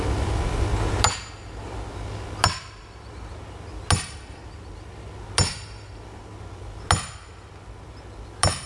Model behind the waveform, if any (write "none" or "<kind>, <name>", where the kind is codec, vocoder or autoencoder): none